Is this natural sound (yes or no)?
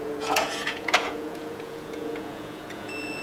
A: no